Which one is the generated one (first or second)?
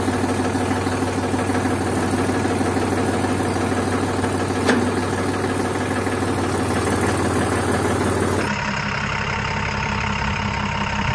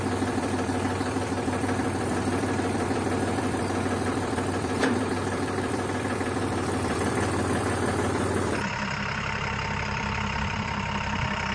second